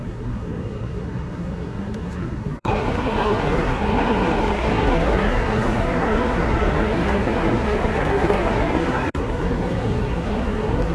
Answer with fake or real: fake